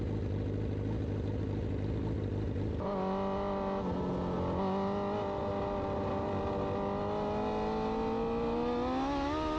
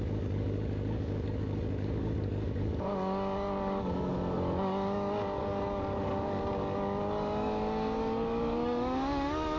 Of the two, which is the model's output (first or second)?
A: second